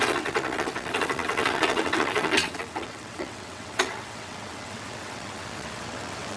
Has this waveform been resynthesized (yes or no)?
yes